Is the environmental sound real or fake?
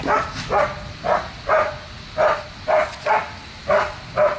real